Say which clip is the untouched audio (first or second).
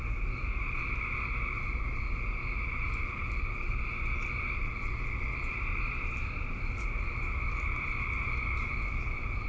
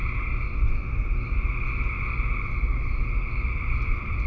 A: second